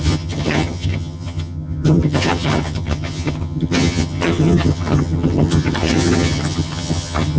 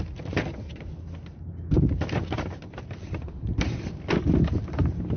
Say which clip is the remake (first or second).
first